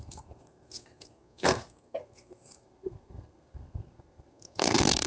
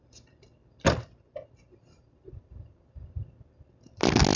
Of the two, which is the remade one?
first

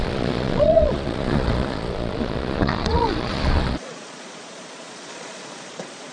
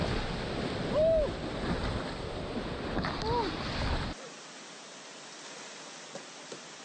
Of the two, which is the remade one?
first